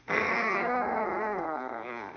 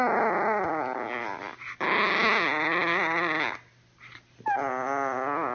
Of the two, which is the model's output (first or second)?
first